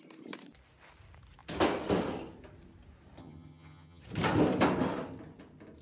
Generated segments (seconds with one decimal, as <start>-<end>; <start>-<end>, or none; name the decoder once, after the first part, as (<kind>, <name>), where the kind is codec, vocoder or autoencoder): 3.2-4.0 (vocoder, HiFi-GAN)